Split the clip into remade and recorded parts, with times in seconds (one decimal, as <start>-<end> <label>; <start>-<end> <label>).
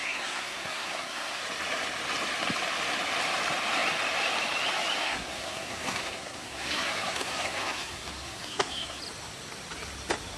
0.0-1.4 remade; 1.4-5.0 recorded; 5.0-9.0 remade; 9.0-10.4 recorded